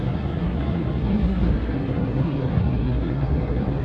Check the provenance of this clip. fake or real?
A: fake